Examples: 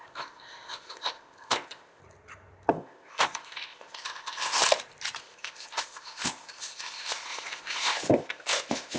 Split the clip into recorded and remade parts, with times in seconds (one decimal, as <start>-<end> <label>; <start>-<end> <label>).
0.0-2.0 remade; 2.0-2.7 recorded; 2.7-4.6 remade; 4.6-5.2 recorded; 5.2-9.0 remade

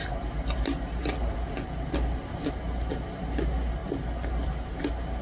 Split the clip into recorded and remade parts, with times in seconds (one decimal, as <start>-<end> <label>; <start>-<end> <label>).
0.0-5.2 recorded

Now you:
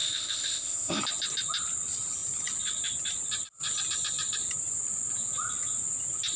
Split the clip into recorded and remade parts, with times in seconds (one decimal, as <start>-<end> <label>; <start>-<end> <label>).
0.0-1.0 remade; 1.0-6.4 recorded

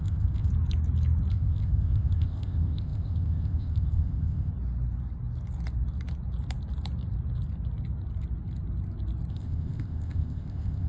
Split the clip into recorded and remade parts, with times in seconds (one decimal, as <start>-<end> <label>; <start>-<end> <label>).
0.0-0.5 remade; 0.5-1.3 recorded; 1.3-4.5 remade; 4.5-9.3 recorded; 9.3-10.9 remade

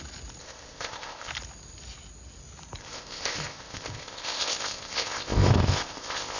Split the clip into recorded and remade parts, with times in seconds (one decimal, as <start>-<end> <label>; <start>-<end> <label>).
0.0-0.4 recorded; 0.4-1.3 remade; 1.3-2.8 recorded; 2.8-6.4 remade